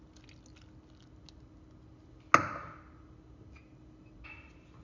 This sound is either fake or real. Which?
real